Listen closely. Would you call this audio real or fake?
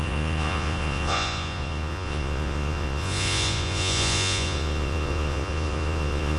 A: fake